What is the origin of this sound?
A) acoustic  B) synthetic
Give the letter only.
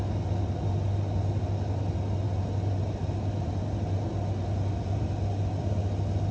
A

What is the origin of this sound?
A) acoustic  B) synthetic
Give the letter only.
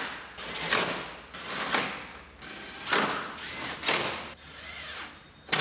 A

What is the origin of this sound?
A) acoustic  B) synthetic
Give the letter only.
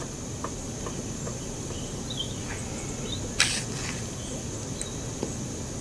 A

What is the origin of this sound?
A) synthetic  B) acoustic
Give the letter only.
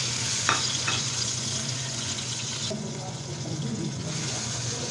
A